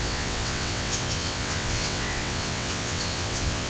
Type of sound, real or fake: fake